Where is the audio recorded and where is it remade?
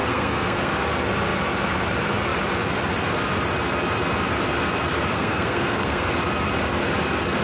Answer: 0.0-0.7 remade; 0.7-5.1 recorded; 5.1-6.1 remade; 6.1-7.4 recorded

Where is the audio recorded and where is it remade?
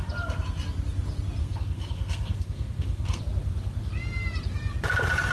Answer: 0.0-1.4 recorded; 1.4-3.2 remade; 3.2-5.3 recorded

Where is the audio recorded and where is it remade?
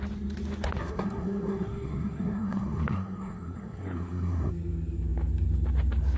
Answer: 0.0-0.8 recorded; 0.8-4.5 remade; 4.5-6.2 recorded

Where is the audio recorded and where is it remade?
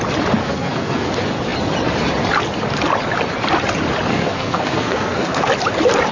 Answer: 0.0-0.4 recorded; 0.4-1.1 remade; 1.1-4.1 recorded; 4.1-5.5 remade; 5.5-6.1 recorded